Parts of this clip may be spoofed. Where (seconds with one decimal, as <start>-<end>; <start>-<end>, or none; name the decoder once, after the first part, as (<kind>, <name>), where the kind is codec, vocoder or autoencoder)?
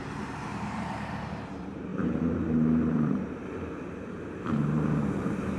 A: 0.0-5.6 (vocoder, BigVGAN v2)